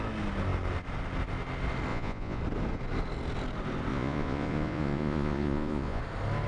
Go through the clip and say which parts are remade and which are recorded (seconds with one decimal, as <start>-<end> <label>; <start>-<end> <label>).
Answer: 0.0-1.9 recorded; 1.9-2.4 remade; 2.4-3.9 recorded; 3.9-6.0 remade; 6.0-6.5 recorded